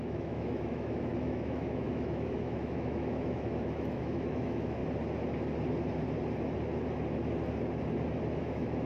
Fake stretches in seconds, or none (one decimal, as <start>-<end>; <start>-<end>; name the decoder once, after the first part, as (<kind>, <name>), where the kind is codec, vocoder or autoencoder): 0.0-4.8 (autoencoder, DAC-VAE); 8.4-8.9